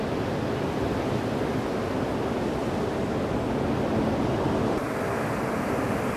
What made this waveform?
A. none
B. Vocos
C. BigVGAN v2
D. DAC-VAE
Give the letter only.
A